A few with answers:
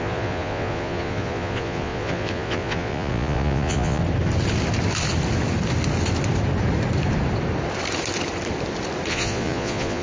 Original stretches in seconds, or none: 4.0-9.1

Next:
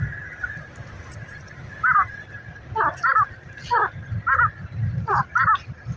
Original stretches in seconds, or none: 0.0-6.0

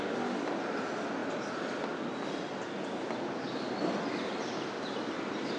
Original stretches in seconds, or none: 0.0-5.6

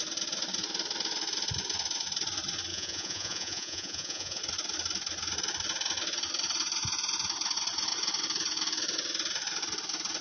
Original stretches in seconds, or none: 0.0-2.7; 4.4-10.2

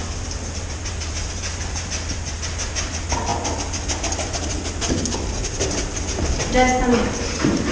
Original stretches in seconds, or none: 0.0-7.7

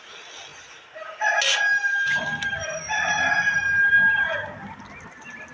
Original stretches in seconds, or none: 0.0-5.5

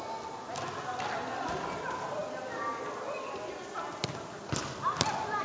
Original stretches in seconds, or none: 0.0-5.4